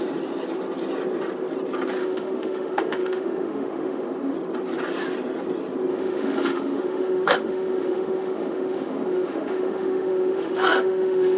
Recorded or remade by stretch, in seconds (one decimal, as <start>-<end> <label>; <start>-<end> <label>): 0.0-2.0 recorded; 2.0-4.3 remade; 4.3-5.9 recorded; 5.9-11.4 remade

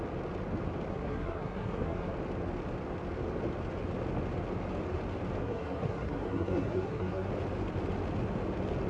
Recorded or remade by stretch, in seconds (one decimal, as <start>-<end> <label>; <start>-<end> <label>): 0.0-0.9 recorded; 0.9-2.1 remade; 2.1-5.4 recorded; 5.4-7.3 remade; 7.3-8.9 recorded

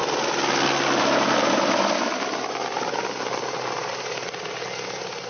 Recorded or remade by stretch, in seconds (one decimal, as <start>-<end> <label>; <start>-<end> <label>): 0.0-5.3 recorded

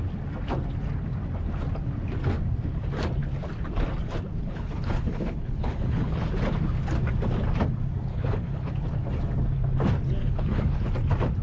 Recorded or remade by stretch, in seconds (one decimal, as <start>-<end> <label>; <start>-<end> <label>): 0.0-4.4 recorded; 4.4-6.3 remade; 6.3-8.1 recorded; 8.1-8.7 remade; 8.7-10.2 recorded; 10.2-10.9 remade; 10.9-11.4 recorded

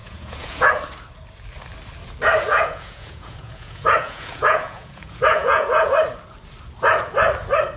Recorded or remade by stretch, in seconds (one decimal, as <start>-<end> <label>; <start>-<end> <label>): 0.0-0.7 remade; 0.7-2.5 recorded; 2.5-5.9 remade; 5.9-7.8 recorded